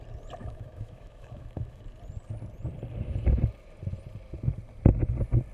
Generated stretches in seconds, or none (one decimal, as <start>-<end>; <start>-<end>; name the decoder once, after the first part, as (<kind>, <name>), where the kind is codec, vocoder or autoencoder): 0.4-1.8 (autoencoder, DAC-VAE)